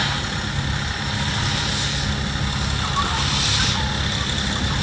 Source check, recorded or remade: recorded